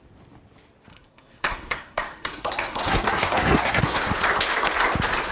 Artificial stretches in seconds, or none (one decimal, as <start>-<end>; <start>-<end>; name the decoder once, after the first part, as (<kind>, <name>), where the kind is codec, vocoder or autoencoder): 0.9-4.1 (codec, SNAC)